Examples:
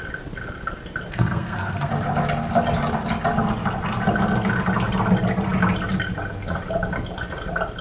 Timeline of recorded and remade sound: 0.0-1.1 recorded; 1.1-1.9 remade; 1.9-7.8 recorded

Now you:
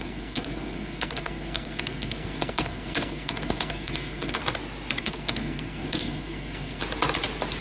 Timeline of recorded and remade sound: 0.0-4.4 remade; 4.4-5.0 recorded; 5.0-6.8 remade; 6.8-7.6 recorded

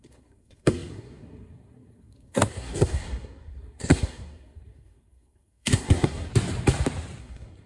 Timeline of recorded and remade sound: 0.0-6.3 remade; 6.3-7.2 recorded; 7.2-7.7 remade

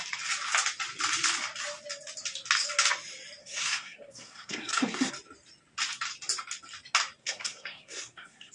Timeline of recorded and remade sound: 0.0-3.4 recorded; 3.4-5.1 remade; 5.1-7.2 recorded; 7.2-8.5 remade

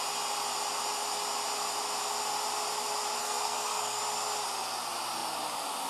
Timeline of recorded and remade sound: 0.0-3.2 recorded; 3.2-4.0 remade; 4.0-5.9 recorded

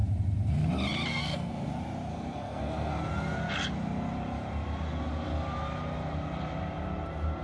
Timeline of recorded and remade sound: 0.0-1.1 recorded; 1.1-1.7 remade; 1.7-2.1 recorded; 2.1-3.0 remade; 3.0-7.4 recorded

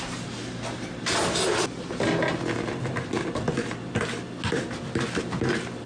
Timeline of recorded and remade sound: 0.0-5.9 recorded

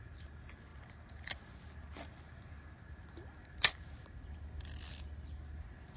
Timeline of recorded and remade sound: 0.0-6.0 recorded